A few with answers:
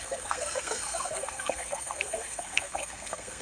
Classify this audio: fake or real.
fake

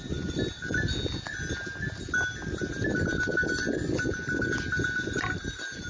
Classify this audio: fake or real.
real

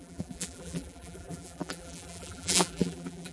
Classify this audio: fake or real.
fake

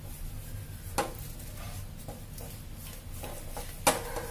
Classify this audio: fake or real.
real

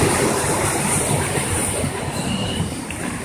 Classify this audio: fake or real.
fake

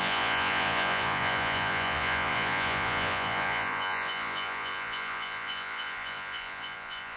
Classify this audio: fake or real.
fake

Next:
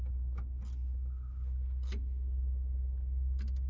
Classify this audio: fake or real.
real